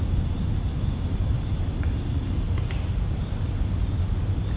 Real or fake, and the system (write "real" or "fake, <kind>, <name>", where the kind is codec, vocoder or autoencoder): real